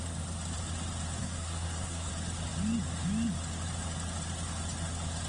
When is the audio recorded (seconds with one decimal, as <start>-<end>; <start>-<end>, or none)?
0.0-1.2; 2.1-5.3